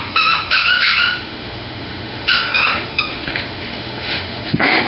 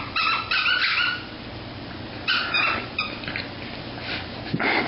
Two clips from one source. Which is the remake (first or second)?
first